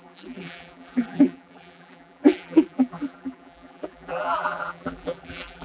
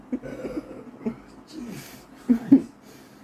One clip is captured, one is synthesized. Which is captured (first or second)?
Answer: second